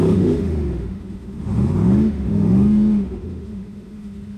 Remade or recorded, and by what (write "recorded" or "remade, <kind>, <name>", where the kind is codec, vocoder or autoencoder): remade, autoencoder, DAC-VAE